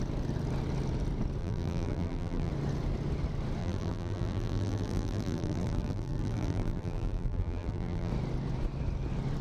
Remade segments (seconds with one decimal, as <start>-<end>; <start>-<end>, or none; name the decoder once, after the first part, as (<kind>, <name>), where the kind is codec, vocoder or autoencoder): 1.4-2.5 (vocoder, BigVGAN v2); 3.6-8.1